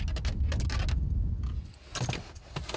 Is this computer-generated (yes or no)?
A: no